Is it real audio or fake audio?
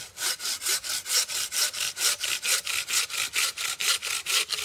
real